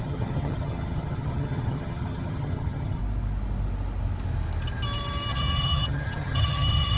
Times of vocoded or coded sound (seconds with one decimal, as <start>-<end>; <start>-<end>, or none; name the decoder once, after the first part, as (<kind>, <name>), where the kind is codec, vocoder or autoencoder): 0.0-3.0 (vocoder, HiFi-GAN); 5.3-7.0